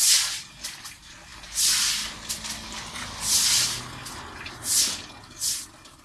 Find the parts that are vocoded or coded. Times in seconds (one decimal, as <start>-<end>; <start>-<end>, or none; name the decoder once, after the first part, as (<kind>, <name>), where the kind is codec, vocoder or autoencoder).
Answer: none